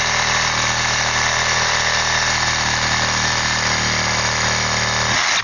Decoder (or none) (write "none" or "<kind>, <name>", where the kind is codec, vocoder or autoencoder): none